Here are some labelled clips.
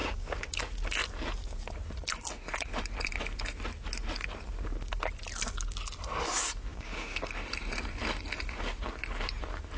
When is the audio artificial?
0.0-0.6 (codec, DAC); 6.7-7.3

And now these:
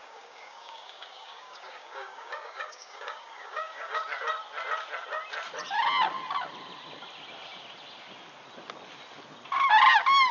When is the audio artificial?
0.0-4.0 (codec, DAC)

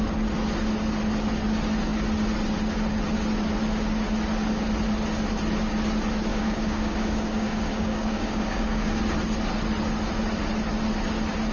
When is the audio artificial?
6.3-9.0 (codec, DAC)

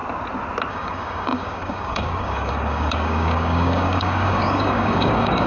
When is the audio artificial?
0.7-5.5 (codec, DAC)

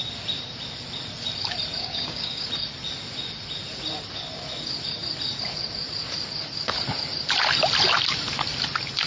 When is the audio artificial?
1.8-2.5 (codec, DAC)

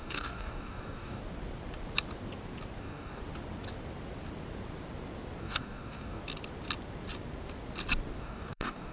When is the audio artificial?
0.0-1.2 (codec, DAC); 2.8-3.2; 5.4-6.2; 8.2-8.9

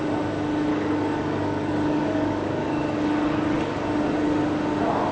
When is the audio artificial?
0.7-3.8 (codec, DAC)

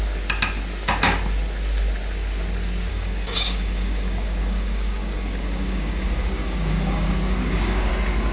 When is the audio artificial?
2.9-7.9 (codec, DAC)